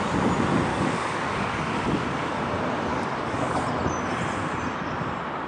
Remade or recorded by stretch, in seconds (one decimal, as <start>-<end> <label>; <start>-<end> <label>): 0.0-0.7 recorded; 0.7-2.4 remade; 2.4-2.9 recorded; 2.9-3.6 remade; 3.6-5.5 recorded